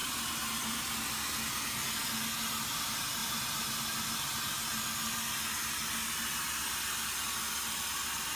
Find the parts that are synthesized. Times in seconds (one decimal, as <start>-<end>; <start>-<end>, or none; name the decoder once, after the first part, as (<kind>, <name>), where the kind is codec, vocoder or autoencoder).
0.0-0.9 (vocoder, BigVGAN v2)